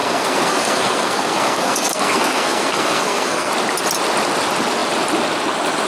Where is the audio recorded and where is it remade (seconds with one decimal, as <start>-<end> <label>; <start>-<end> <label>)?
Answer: 0.0-3.5 remade; 3.5-5.9 recorded